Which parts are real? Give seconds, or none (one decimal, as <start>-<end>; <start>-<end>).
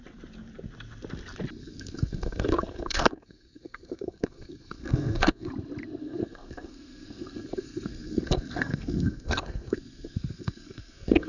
0.0-1.6; 5.5-6.0